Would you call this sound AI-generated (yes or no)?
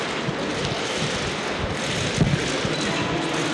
no